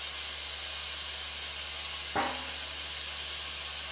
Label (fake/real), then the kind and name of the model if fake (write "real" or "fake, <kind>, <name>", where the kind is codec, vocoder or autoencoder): real